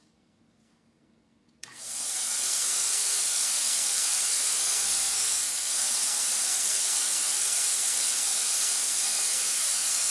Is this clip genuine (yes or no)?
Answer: no